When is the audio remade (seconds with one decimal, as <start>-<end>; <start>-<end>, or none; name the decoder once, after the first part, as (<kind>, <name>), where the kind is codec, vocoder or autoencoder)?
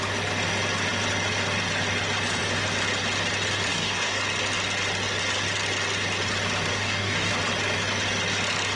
3.7-4.2 (codec, DAC); 6.7-7.3